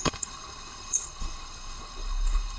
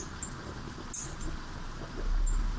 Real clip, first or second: second